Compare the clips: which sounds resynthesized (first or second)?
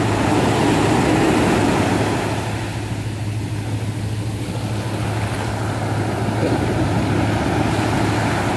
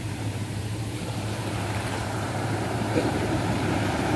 second